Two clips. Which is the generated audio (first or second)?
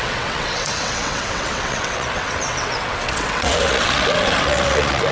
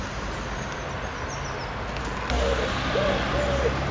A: first